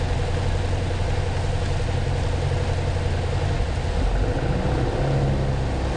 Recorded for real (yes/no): yes